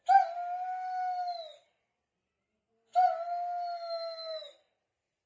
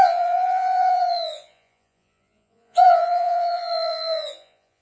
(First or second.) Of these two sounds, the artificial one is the second